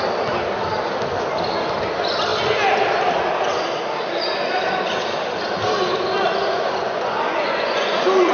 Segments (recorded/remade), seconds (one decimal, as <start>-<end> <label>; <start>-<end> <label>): 0.0-6.4 recorded; 6.4-8.3 remade